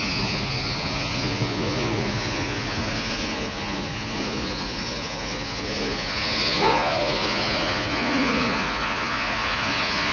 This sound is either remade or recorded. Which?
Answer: remade